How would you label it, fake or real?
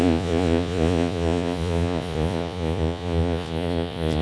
fake